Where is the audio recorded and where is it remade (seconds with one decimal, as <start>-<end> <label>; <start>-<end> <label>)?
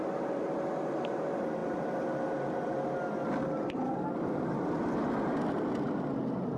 0.0-6.6 recorded